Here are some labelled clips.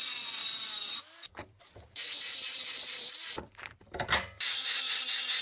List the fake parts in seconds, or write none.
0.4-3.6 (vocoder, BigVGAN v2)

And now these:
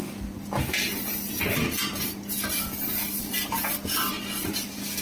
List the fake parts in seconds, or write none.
none